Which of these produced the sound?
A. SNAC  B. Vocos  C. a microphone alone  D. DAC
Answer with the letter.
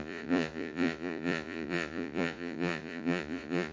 B